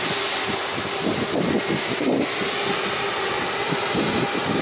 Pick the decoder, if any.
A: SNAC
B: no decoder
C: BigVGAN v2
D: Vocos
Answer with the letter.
B